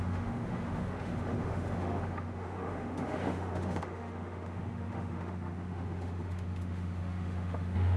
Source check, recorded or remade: remade